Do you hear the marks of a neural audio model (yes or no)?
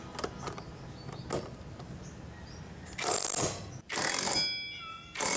no